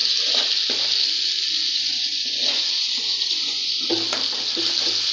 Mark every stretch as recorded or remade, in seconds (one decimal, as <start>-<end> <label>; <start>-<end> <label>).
0.0-1.7 recorded; 1.7-3.9 remade; 3.9-5.1 recorded